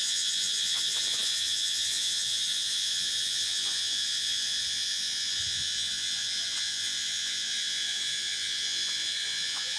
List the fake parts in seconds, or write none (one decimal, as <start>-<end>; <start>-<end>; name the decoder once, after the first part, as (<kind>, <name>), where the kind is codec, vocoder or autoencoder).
0.0-9.8 (vocoder, Vocos)